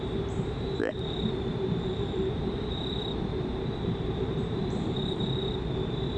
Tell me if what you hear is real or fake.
fake